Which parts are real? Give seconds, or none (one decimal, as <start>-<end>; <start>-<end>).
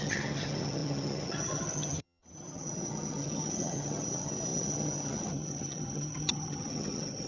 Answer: none